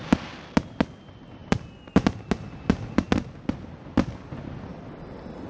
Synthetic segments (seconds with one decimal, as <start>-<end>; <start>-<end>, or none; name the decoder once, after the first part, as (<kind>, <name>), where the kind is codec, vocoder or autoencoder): 1.4-2.2 (vocoder, BigVGAN v2); 4.7-5.5